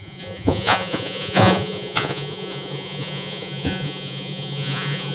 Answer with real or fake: fake